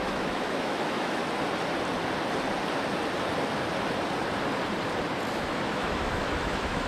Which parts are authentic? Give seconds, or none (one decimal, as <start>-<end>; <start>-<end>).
1.2-5.3